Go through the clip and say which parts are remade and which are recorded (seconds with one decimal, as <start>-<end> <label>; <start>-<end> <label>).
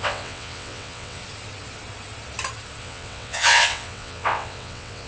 0.0-1.2 remade; 1.2-2.8 recorded; 2.8-5.1 remade